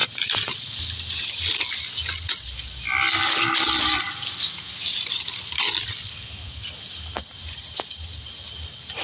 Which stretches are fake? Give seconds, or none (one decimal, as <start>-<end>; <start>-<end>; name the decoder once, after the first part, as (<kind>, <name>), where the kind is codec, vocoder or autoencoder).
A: none